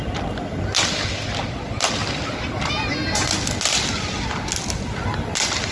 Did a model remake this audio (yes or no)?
no